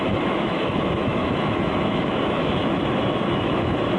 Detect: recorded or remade remade